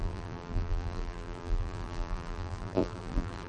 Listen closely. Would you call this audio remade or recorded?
remade